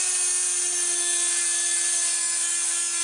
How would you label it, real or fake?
real